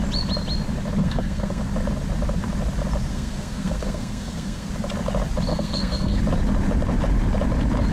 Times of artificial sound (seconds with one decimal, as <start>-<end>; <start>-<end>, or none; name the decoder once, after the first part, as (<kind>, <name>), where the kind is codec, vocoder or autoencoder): 1.0-1.6 (codec, SNAC); 3.1-4.7; 5.5-6.2